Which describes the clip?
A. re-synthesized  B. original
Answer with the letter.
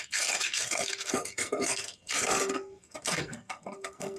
A